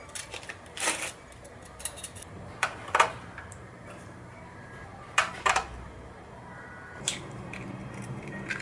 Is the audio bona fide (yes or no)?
no